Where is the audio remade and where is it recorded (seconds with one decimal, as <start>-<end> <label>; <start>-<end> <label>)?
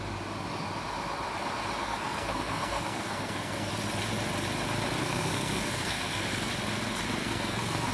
0.0-1.8 recorded; 1.8-3.7 remade; 3.7-5.0 recorded; 5.0-6.5 remade; 6.5-7.2 recorded; 7.2-7.9 remade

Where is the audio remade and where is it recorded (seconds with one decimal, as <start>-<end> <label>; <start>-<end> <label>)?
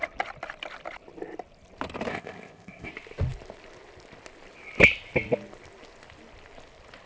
0.0-2.1 recorded; 2.1-2.9 remade; 2.9-7.1 recorded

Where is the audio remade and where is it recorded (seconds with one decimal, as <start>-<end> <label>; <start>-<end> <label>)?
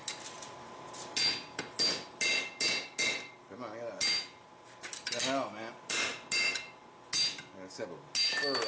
0.0-8.7 recorded